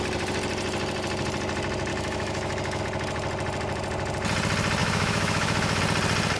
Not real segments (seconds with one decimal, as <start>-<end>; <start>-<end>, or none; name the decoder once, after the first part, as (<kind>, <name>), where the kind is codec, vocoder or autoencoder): 1.9-2.8 (autoencoder, DAC-VAE); 4.8-5.8